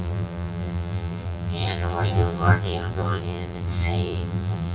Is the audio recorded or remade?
remade